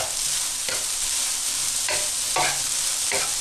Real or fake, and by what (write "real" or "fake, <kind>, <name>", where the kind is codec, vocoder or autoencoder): real